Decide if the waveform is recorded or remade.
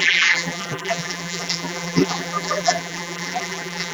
remade